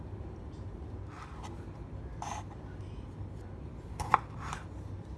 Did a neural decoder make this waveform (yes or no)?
no